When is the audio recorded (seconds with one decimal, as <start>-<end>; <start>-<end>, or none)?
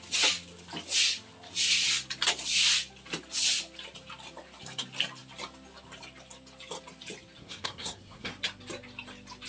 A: 0.0-7.4; 8.3-9.5